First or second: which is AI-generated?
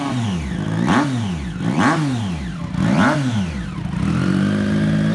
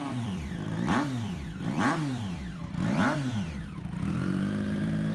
second